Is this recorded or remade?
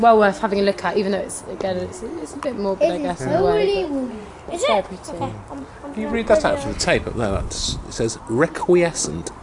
recorded